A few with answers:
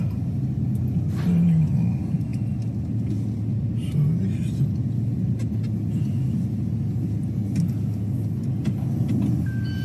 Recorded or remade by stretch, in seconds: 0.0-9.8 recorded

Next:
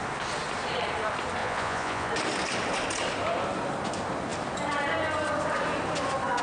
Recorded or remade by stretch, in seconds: 0.0-1.4 recorded; 1.4-2.1 remade; 2.1-6.4 recorded

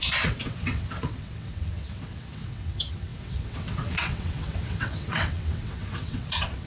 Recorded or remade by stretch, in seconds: 0.0-6.7 remade

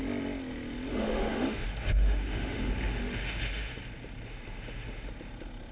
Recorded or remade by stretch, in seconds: 0.0-0.9 recorded; 0.9-3.8 remade; 3.8-4.3 recorded; 4.3-5.1 remade; 5.1-5.7 recorded

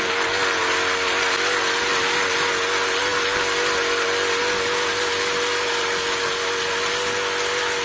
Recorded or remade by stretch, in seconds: 0.0-7.8 recorded

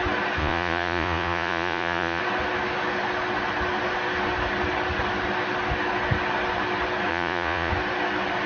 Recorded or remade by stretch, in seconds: 0.0-0.4 recorded; 0.4-2.2 remade; 2.2-7.1 recorded; 7.1-7.7 remade; 7.7-8.5 recorded

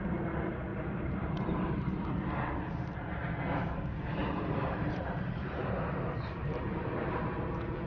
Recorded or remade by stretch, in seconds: 0.0-0.7 recorded; 0.7-2.2 remade; 2.2-4.2 recorded; 4.2-7.3 remade; 7.3-7.9 recorded

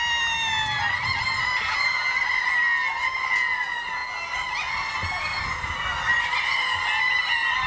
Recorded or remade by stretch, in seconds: 0.0-7.7 recorded